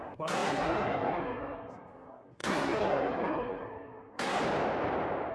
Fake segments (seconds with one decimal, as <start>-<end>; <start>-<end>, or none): 0.0-4.4